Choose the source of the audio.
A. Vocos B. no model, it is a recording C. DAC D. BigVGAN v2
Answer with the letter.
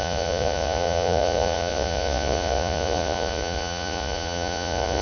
A